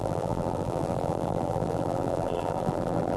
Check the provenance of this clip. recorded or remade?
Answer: remade